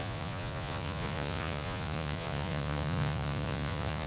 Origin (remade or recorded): remade